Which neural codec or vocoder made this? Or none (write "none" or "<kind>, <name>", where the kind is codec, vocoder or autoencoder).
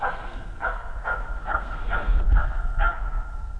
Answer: codec, SNAC